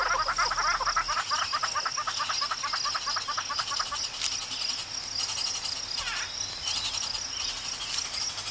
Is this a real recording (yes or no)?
yes